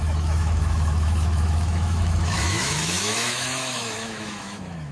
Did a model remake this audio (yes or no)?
yes